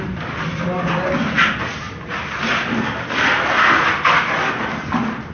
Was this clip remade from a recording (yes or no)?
no